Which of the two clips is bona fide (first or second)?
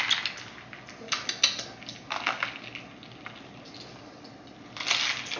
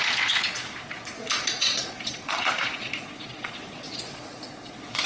first